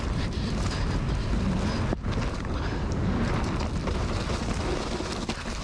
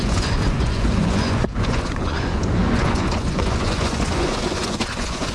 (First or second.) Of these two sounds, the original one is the first